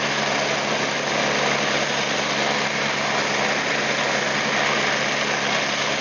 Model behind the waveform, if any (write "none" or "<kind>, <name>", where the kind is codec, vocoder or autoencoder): none